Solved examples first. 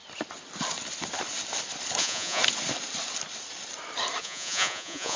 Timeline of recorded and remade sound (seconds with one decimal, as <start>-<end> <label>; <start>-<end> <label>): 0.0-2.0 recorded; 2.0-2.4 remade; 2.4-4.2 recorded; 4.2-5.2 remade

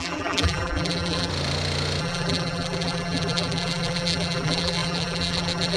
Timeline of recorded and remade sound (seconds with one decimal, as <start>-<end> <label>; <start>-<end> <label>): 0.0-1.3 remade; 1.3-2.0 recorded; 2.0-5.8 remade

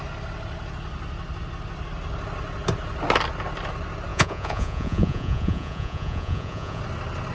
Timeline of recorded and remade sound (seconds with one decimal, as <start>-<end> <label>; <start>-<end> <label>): 0.0-4.1 recorded; 4.1-6.8 remade; 6.8-7.3 recorded

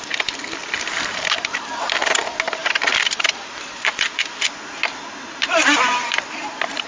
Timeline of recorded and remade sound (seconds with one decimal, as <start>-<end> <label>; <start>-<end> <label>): 0.0-0.6 recorded; 0.6-1.8 remade; 1.8-2.6 recorded; 2.6-6.5 remade; 6.5-6.9 recorded

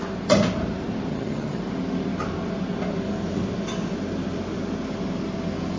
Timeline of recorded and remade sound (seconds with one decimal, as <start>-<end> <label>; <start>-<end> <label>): 0.0-1.1 recorded; 1.1-1.6 remade; 1.6-5.8 recorded

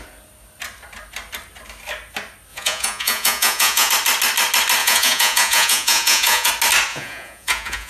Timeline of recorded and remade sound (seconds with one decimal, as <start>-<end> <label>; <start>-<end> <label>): 0.0-2.5 recorded; 2.5-3.9 remade; 3.9-4.8 recorded; 4.8-6.5 remade; 6.5-6.9 recorded; 6.9-7.9 remade